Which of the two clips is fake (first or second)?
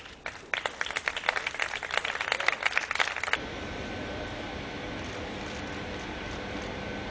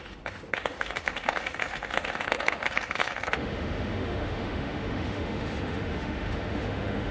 second